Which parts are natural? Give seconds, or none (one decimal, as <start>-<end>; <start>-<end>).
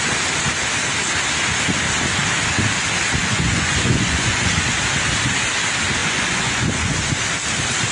0.0-3.2; 4.5-6.0; 7.0-7.9